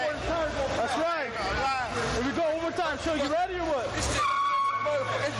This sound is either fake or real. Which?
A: real